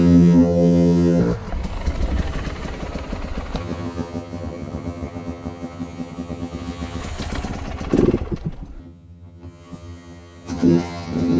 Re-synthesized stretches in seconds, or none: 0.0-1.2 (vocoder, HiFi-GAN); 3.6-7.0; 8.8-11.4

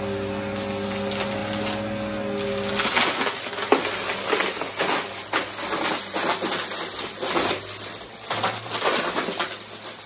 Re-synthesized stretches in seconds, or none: none

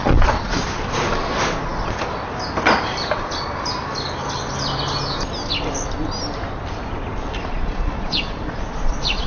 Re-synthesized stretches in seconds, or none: 0.0-0.6 (vocoder, Vocos); 7.5-9.3